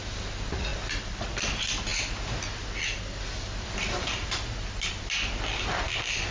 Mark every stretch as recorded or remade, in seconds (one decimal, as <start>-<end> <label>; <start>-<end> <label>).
0.0-6.3 recorded